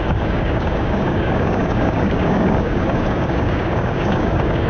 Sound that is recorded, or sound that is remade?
remade